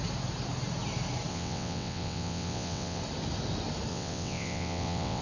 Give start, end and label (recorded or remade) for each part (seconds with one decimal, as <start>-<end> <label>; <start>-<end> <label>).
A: 0.0-1.3 recorded; 1.3-3.0 remade; 3.0-3.9 recorded; 3.9-5.2 remade